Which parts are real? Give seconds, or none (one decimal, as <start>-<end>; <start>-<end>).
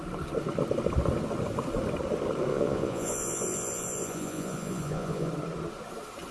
0.0-2.5; 5.3-6.3